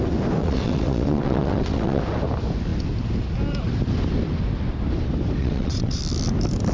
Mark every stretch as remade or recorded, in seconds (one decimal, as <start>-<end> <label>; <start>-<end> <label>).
0.0-0.4 recorded; 0.4-2.0 remade; 2.0-5.4 recorded; 5.4-6.0 remade; 6.0-6.7 recorded

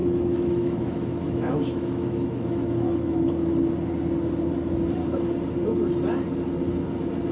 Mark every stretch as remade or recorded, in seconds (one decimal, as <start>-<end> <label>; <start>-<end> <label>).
0.0-3.3 remade; 3.3-7.3 recorded

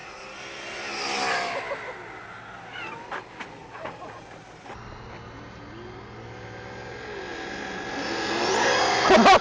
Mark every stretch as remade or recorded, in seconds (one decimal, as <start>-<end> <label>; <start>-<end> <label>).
0.0-3.6 recorded; 3.6-4.1 remade; 4.1-9.4 recorded

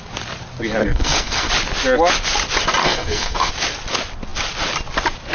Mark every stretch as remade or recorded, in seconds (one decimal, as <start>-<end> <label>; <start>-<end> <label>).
0.0-0.8 recorded; 0.8-1.5 remade; 1.5-2.8 recorded; 2.8-3.5 remade; 3.5-5.3 recorded